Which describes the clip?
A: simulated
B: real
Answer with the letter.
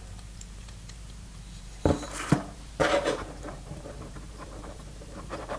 A